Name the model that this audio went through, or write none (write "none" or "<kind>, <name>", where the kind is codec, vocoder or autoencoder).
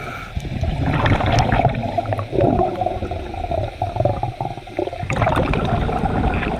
none